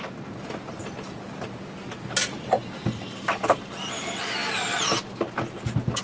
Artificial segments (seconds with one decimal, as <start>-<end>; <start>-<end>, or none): none